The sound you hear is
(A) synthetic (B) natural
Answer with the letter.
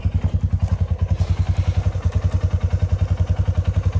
B